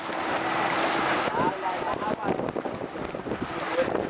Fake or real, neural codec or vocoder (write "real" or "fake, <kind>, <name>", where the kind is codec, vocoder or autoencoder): real